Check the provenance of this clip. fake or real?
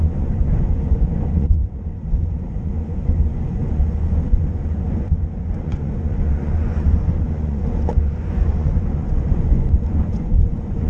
fake